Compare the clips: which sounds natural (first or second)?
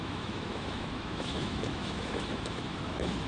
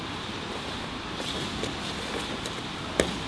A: second